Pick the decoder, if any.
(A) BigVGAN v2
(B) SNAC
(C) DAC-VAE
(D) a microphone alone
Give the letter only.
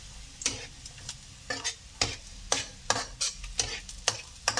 D